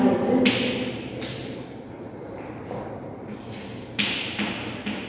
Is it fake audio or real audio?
real